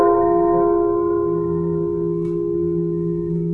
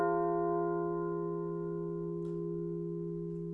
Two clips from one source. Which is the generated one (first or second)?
first